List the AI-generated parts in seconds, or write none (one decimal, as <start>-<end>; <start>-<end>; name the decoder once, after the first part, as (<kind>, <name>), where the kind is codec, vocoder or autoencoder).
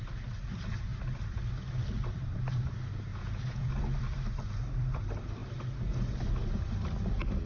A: 3.1-3.7 (vocoder, Vocos)